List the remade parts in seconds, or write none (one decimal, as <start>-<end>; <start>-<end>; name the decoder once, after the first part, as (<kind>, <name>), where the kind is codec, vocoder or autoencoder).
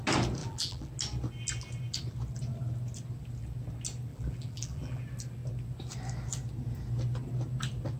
0.4-0.9 (vocoder, BigVGAN v2); 4.1-5.0